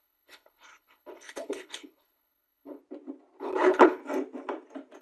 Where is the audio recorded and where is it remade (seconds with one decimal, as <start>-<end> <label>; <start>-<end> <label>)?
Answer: 0.0-2.8 remade; 2.8-3.4 recorded; 3.4-4.0 remade; 4.0-5.0 recorded